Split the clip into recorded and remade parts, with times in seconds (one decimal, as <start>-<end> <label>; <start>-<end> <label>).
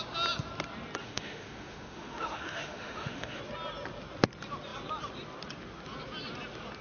0.0-1.0 recorded; 1.0-3.4 remade; 3.4-6.8 recorded